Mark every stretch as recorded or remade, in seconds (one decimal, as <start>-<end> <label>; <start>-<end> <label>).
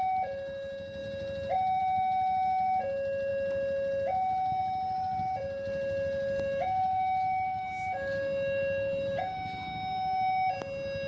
0.0-11.1 recorded